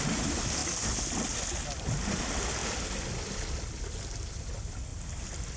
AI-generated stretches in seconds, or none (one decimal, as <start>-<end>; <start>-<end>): none